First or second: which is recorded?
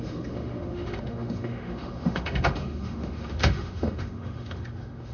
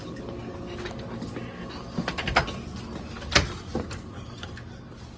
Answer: second